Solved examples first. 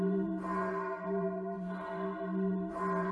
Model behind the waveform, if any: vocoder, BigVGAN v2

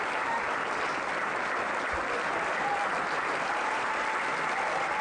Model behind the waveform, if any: vocoder, BigVGAN v2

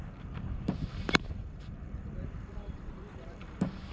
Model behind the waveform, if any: vocoder, BigVGAN v2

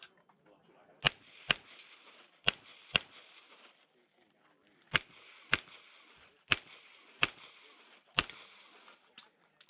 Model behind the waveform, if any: vocoder, BigVGAN v2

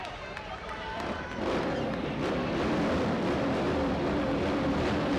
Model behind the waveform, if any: vocoder, BigVGAN v2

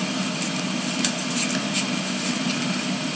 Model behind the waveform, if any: none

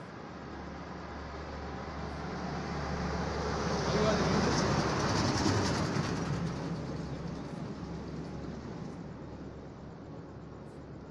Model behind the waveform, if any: none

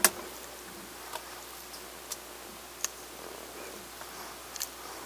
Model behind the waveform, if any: none